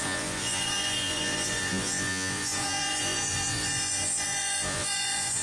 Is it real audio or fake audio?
fake